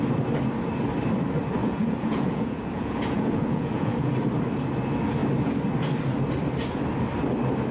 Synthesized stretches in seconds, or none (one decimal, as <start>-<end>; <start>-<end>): 1.6-4.1